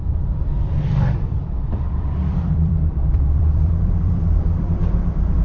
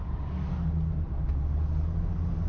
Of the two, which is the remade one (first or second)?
first